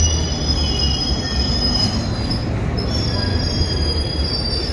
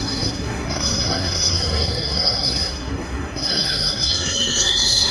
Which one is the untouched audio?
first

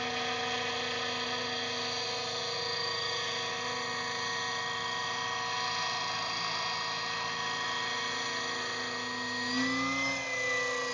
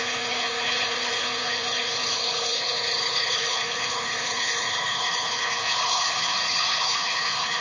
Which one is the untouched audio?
first